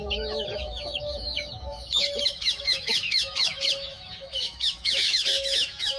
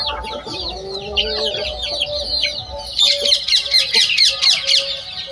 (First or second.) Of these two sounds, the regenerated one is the first